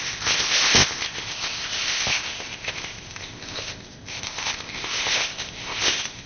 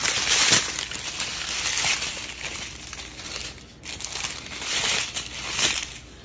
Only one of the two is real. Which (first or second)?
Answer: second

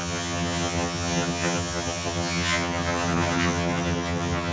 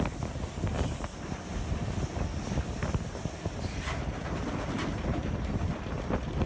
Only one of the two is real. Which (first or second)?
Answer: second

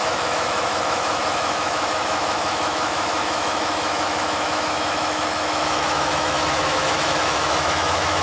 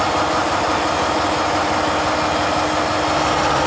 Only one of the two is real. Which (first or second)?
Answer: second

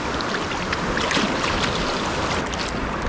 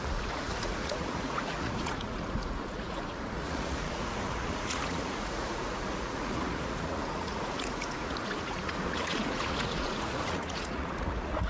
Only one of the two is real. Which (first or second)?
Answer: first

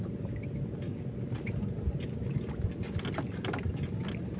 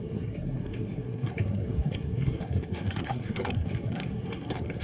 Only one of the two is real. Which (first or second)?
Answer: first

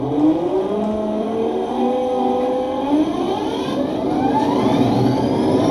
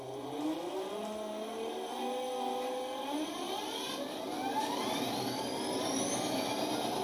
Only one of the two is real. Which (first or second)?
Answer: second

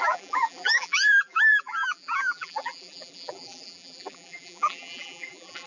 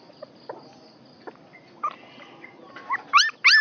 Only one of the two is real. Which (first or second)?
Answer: second